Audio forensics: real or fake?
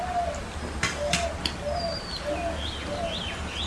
real